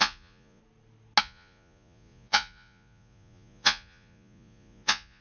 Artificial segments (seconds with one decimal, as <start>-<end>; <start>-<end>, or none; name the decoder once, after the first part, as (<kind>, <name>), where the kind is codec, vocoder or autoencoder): 0.0-0.6 (vocoder, Vocos); 1.2-5.2